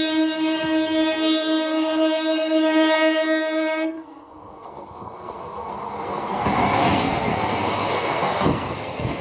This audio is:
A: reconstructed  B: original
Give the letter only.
A